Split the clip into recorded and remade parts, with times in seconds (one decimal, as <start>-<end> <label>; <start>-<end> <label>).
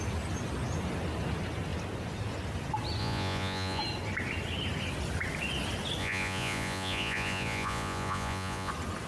0.0-3.0 recorded; 3.0-3.8 remade; 3.8-6.0 recorded; 6.0-8.7 remade; 8.7-9.1 recorded